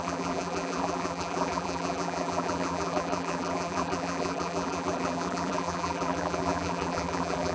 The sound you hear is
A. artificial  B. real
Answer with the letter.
A